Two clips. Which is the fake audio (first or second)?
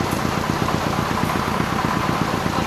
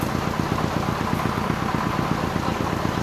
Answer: first